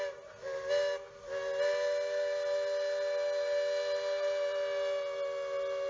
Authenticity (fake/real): real